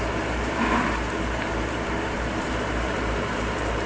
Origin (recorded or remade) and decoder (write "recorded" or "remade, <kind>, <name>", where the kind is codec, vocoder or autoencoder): remade, vocoder, BigVGAN v2